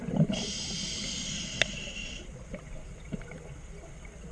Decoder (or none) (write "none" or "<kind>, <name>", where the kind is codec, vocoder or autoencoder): none